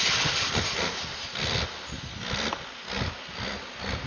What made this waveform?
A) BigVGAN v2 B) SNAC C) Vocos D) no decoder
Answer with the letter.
D